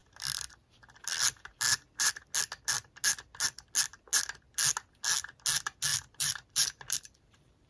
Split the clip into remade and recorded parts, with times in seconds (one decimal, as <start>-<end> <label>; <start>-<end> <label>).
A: 0.0-2.1 remade; 2.1-5.9 recorded; 5.9-7.7 remade